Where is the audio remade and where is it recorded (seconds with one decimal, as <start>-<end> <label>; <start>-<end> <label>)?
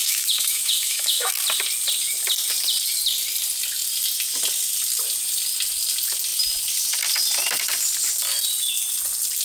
0.0-1.3 remade; 1.3-9.4 recorded